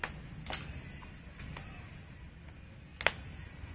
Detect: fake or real real